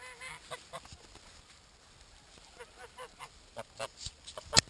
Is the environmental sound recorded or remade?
recorded